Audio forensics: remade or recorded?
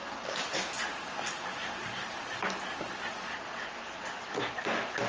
recorded